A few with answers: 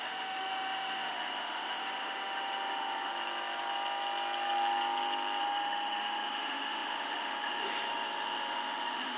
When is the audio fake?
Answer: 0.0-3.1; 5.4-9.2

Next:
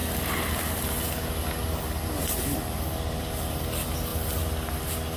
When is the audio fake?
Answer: none

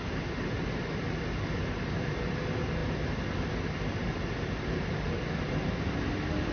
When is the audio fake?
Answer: 2.8-5.7

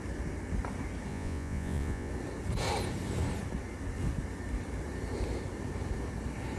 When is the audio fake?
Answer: 1.1-2.1

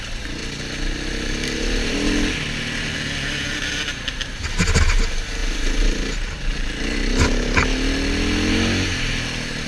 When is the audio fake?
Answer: none

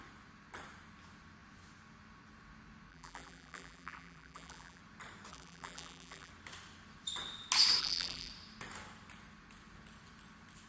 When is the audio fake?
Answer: 2.9-4.8; 5.3-6.3; 7.8-8.3